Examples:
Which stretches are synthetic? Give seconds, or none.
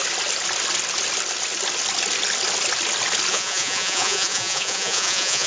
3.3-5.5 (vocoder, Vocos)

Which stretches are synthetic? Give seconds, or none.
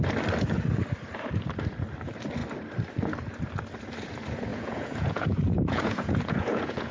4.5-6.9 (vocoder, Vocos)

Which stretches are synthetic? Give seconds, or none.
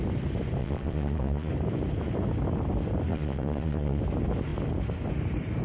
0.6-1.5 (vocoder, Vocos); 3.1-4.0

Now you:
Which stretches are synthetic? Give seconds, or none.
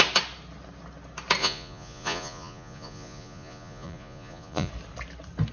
1.4-4.7 (vocoder, Vocos)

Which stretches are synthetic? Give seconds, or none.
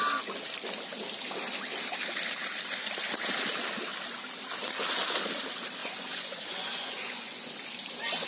5.8-7.5 (vocoder, Vocos)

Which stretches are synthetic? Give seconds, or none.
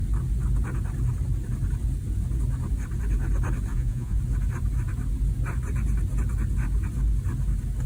3.7-4.2 (vocoder, Vocos)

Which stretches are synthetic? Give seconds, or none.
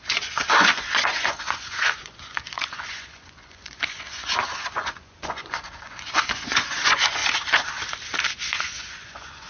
0.0-7.2 (vocoder, Vocos); 8.3-9.5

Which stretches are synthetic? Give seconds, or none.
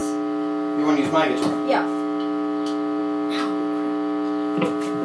none